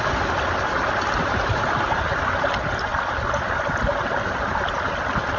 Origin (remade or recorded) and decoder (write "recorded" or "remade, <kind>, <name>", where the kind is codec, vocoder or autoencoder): recorded